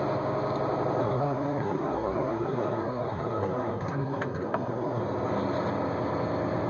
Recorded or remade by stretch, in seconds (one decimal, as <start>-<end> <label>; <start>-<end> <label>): 0.0-1.0 recorded; 1.0-5.0 remade; 5.0-6.7 recorded